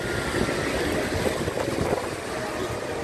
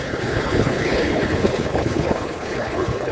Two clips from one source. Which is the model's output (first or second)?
second